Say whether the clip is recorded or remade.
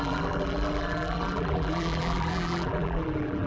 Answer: remade